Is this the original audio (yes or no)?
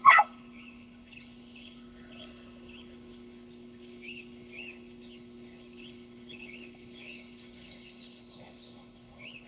no